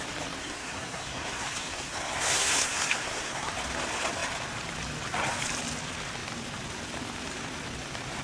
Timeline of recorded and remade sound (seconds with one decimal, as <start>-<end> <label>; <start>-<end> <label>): 0.0-0.4 recorded; 0.4-3.5 remade; 3.5-8.2 recorded